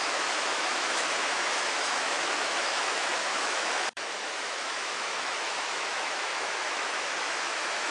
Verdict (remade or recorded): remade